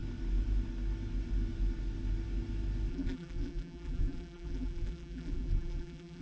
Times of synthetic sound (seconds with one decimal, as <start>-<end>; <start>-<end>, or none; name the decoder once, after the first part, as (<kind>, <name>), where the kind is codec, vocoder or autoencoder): 2.9-6.2 (vocoder, BigVGAN v2)